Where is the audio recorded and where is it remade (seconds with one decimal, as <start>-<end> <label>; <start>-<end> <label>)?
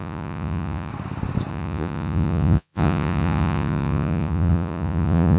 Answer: 0.0-0.9 remade; 0.9-1.5 recorded; 1.5-5.4 remade